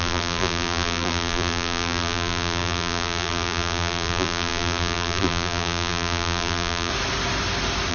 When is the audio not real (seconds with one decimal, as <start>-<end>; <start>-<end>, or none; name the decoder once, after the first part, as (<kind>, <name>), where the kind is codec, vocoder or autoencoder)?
0.0-6.9 (vocoder, BigVGAN v2)